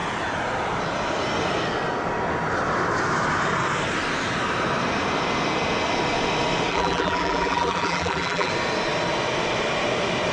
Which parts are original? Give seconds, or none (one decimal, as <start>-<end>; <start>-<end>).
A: 0.0-6.7; 8.5-10.3